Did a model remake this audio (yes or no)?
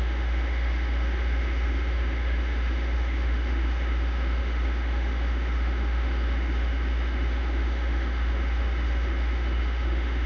yes